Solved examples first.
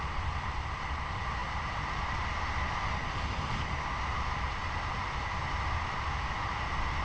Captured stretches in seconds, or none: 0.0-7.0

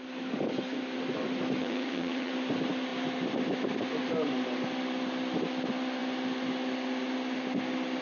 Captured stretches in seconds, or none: 0.0-1.6; 2.3-8.0

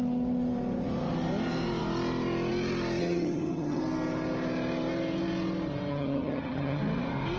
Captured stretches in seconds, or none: 0.0-3.0; 3.8-5.9; 6.8-7.4

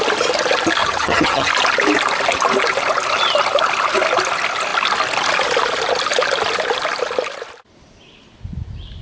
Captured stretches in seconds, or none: 0.0-0.8; 1.5-9.0